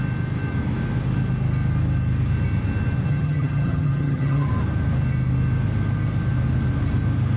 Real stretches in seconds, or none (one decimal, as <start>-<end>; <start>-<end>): 0.0-3.1; 4.5-7.4